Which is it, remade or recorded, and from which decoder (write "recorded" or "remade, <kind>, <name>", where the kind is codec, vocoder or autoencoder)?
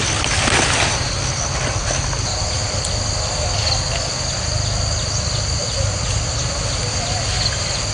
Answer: recorded